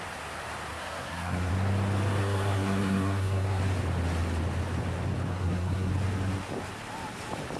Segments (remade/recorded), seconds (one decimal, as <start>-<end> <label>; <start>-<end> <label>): 0.0-0.7 recorded; 0.7-1.5 remade; 1.5-2.2 recorded; 2.2-3.6 remade; 3.6-5.3 recorded; 5.3-5.9 remade; 5.9-7.6 recorded